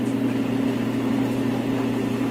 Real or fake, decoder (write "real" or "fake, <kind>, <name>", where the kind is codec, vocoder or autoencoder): real